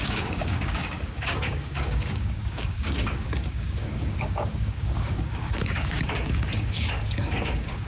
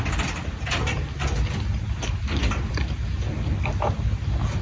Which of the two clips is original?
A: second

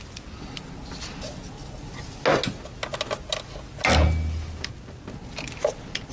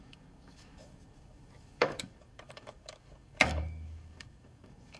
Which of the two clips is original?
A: first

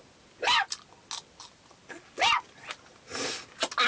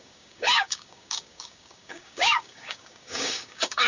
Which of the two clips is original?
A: first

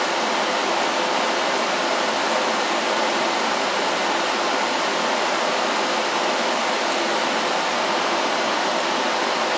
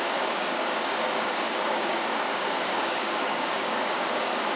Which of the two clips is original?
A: first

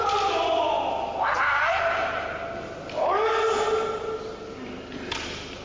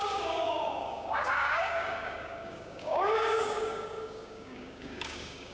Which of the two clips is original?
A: first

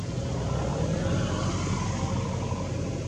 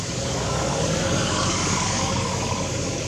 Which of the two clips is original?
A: first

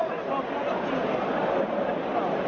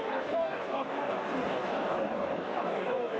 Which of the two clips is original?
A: first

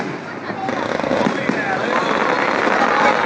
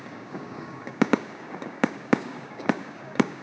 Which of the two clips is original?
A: first